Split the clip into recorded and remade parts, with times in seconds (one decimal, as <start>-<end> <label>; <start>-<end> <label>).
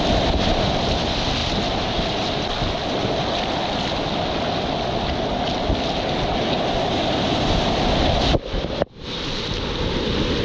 0.0-10.4 recorded